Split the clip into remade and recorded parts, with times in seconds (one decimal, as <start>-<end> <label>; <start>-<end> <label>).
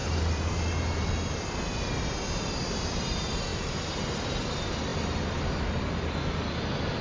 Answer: 0.0-1.1 remade; 1.1-3.5 recorded; 3.5-4.0 remade; 4.0-7.0 recorded